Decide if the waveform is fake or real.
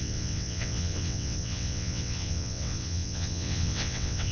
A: fake